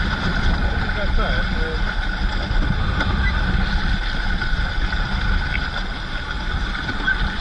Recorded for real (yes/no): yes